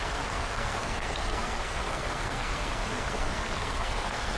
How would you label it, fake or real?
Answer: fake